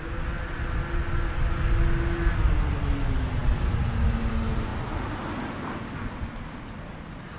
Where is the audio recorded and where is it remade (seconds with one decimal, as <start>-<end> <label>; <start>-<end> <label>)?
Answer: 0.0-7.4 recorded